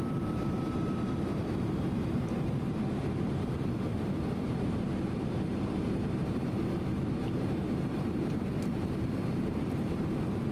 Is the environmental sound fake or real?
fake